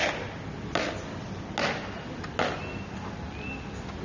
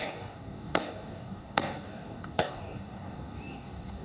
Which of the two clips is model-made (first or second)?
second